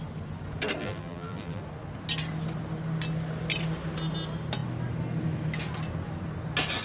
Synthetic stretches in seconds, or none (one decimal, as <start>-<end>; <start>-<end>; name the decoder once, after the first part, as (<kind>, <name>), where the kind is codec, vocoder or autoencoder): 0.8-1.6 (vocoder, BigVGAN v2)